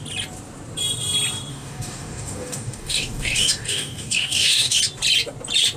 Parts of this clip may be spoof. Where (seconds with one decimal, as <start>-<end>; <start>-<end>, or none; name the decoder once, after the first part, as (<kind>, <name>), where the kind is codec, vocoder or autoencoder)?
1.5-4.8 (codec, DAC)